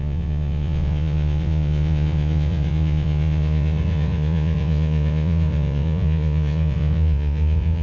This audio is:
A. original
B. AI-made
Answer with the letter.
B